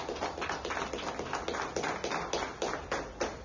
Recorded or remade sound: recorded